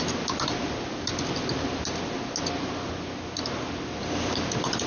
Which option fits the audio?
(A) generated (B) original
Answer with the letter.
B